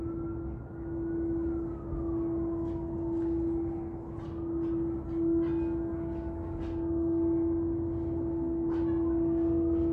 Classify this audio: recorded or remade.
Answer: recorded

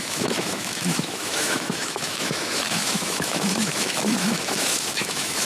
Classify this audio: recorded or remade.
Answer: remade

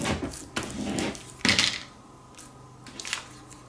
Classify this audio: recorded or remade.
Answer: recorded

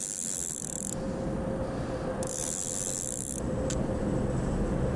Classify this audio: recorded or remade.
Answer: recorded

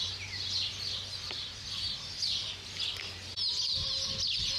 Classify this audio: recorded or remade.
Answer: recorded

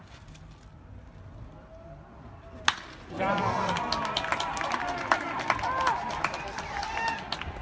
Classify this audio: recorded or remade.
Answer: recorded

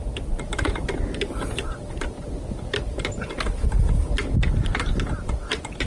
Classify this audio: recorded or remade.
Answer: recorded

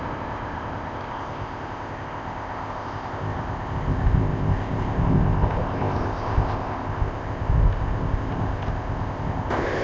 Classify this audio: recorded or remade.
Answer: remade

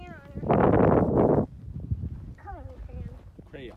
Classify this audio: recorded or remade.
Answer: recorded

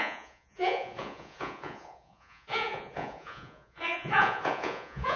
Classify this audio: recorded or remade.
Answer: remade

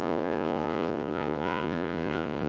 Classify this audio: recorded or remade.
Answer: remade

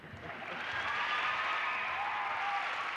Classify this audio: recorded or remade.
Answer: recorded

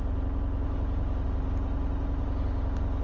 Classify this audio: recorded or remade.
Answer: recorded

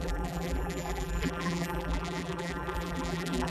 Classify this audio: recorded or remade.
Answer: remade